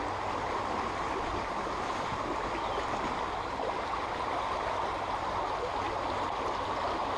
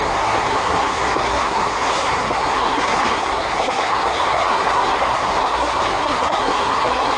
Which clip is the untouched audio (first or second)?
first